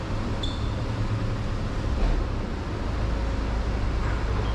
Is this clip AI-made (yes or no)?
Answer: no